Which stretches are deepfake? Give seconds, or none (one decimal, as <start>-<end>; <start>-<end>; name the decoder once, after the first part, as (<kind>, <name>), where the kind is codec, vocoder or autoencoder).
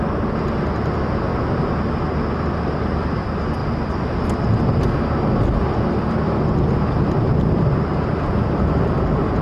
3.6-4.8 (vocoder, BigVGAN v2)